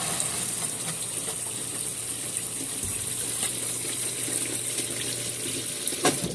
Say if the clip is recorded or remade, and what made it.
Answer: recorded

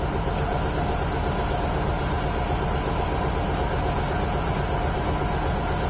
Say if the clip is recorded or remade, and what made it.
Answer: recorded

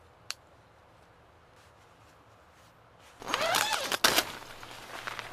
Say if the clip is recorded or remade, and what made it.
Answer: recorded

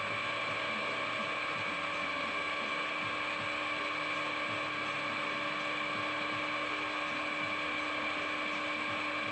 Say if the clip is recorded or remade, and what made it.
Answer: recorded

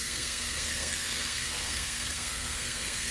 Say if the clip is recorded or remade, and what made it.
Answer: remade, codec, SNAC